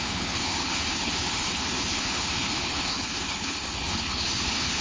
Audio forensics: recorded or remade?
remade